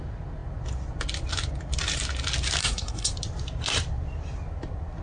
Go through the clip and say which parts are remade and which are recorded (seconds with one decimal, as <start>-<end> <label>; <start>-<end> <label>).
0.0-2.6 recorded; 2.6-3.1 remade; 3.1-5.0 recorded